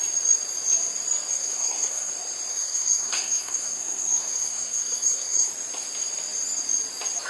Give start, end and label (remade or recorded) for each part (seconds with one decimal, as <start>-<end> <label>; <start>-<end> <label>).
0.0-1.3 recorded; 1.3-2.1 remade; 2.1-2.5 recorded; 2.5-5.5 remade; 5.5-7.3 recorded